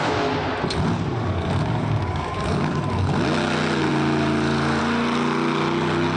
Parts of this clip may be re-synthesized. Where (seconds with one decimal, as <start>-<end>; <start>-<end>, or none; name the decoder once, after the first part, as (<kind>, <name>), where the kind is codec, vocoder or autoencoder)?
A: 1.1-2.8 (codec, DAC)